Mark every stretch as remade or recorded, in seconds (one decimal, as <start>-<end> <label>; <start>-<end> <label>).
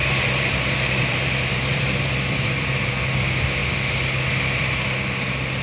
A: 0.0-2.9 remade; 2.9-5.6 recorded